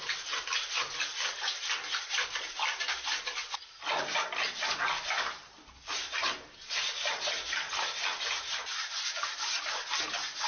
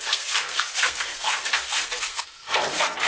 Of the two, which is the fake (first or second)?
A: second